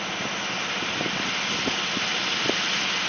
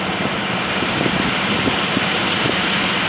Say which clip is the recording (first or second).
first